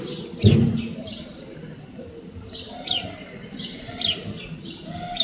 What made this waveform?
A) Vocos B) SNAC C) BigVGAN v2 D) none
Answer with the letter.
C